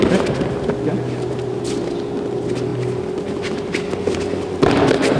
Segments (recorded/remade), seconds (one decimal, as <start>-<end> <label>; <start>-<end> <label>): 0.0-5.2 recorded